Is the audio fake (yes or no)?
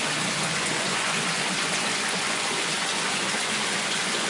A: yes